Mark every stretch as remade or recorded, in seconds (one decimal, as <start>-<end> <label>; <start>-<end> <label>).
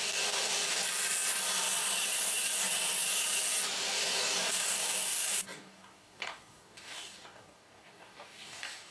0.0-0.8 remade; 0.8-3.9 recorded; 3.9-8.9 remade